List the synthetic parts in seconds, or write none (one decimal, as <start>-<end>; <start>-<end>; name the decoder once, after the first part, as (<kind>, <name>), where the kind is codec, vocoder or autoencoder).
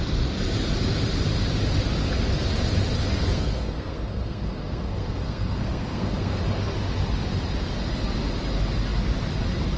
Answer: 3.2-6.4 (codec, SNAC)